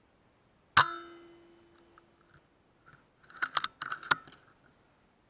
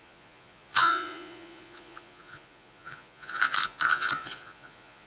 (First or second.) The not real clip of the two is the second